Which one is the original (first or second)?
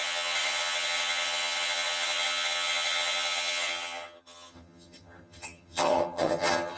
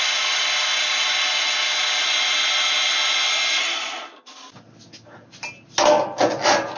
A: second